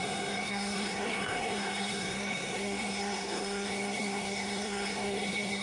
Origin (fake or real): fake